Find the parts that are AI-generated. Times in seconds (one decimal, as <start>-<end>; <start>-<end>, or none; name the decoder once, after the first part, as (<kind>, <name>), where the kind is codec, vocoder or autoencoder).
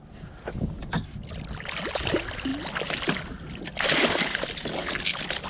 none